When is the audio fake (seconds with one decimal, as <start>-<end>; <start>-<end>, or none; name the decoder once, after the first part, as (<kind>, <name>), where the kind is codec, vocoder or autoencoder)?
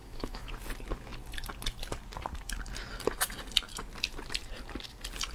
0.0-0.5 (autoencoder, DAC-VAE)